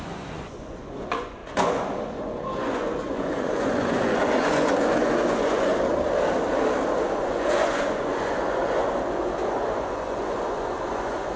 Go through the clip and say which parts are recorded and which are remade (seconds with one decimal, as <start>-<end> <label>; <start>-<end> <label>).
0.0-5.7 remade; 5.7-7.0 recorded; 7.0-11.4 remade